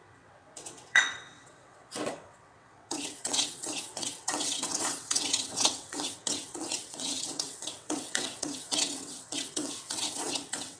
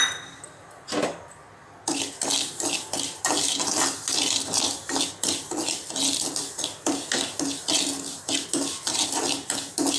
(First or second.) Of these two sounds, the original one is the second